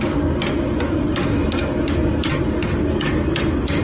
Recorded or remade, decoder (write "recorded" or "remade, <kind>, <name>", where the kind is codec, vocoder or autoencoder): recorded